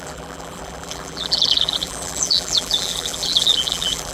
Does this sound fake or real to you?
fake